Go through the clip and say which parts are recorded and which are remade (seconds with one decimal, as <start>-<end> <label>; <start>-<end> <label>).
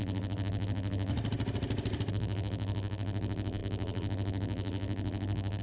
0.0-1.1 remade; 1.1-2.1 recorded; 2.1-5.6 remade